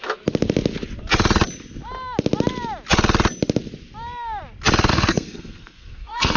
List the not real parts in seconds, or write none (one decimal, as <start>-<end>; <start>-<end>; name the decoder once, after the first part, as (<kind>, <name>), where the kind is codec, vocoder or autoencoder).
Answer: 4.9-6.4 (codec, SNAC)